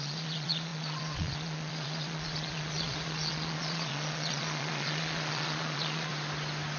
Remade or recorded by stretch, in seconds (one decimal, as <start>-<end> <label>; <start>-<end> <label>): 0.0-6.1 remade; 6.1-6.8 recorded